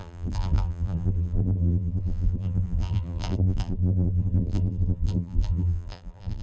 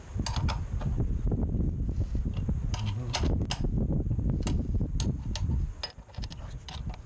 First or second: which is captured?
second